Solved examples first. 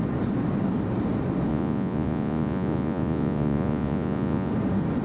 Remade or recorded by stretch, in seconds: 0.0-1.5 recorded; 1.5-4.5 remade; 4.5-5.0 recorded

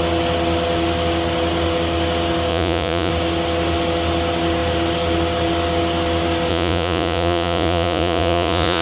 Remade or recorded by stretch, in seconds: 0.0-2.5 recorded; 2.5-3.1 remade; 3.1-6.5 recorded; 6.5-8.8 remade

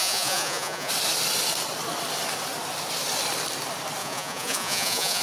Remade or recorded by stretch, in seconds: 0.0-0.9 remade; 0.9-4.0 recorded; 4.0-5.2 remade

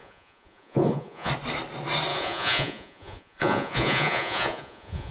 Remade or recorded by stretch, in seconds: 0.0-1.3 remade; 1.3-2.1 recorded; 2.1-5.1 remade

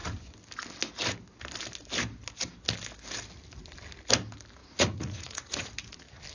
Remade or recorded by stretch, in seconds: 0.0-4.6 recorded; 4.6-5.6 remade; 5.6-6.3 recorded